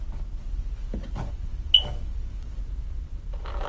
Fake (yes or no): no